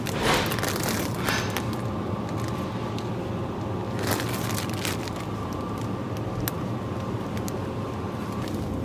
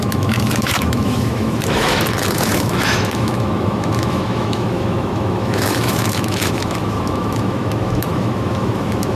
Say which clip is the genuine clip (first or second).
first